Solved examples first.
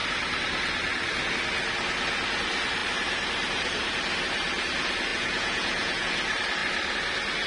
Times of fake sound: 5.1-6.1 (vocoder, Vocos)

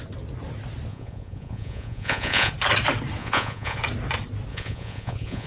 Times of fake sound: 0.9-2.5 (vocoder, Vocos); 3.2-3.8; 4.5-5.5

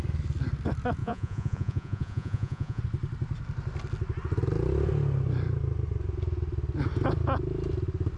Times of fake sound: 1.0-2.8 (vocoder, Vocos)

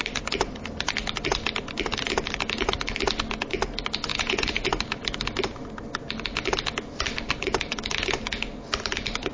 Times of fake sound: 4.1-4.7 (vocoder, Vocos)

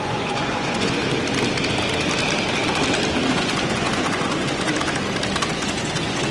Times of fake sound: 0.0-1.0 (vocoder, Vocos); 3.3-4.7; 5.4-6.3

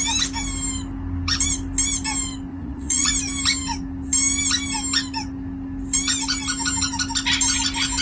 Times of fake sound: 2.5-3.1 (vocoder, Vocos)